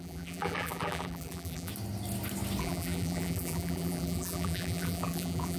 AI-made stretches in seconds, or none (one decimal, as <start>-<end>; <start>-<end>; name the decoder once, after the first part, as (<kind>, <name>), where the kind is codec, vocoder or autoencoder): 0.0-1.7 (vocoder, BigVGAN v2); 2.6-5.6